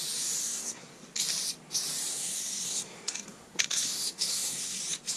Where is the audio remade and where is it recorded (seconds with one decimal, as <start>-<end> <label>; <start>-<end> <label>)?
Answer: 0.0-0.4 recorded; 0.4-1.0 remade; 1.0-2.1 recorded; 2.1-4.8 remade; 4.8-5.2 recorded